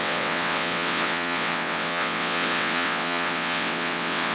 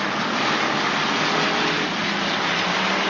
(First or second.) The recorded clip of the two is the second